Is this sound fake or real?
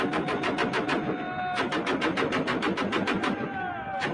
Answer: real